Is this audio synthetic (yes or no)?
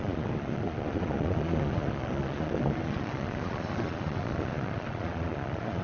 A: yes